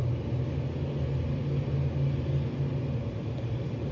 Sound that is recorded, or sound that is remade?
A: recorded